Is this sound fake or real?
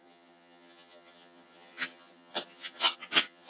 fake